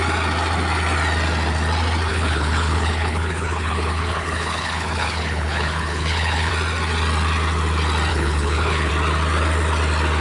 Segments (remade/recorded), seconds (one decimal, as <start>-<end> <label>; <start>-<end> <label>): 0.0-2.1 recorded; 2.1-6.5 remade; 6.5-8.1 recorded; 8.1-8.9 remade; 8.9-10.2 recorded